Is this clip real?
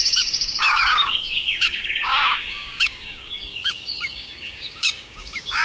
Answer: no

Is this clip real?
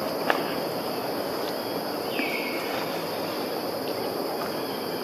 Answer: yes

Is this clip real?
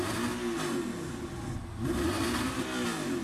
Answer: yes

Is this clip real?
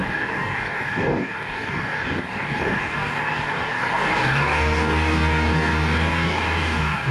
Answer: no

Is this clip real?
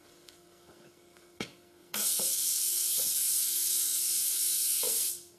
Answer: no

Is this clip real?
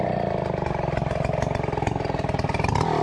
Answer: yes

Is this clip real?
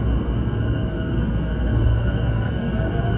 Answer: no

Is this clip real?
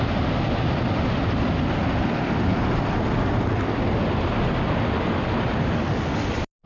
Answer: yes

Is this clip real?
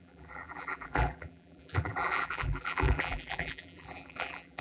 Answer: no